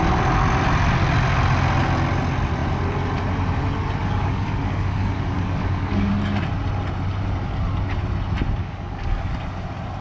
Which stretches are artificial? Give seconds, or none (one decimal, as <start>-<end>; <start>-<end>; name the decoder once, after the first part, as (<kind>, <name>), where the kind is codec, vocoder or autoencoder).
4.0-6.1 (codec, DAC); 8.6-9.3